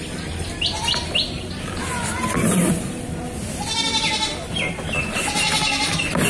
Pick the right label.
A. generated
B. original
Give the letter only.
B